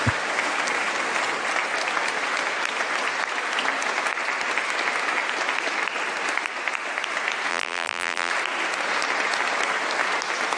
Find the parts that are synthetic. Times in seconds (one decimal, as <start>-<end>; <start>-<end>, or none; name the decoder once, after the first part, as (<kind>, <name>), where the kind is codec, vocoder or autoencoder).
7.5-8.3 (vocoder, BigVGAN v2)